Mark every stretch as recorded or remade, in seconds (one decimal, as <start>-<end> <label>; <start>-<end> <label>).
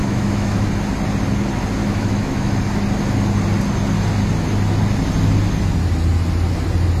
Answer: 0.0-0.7 remade; 0.7-1.8 recorded; 1.8-2.6 remade; 2.6-7.0 recorded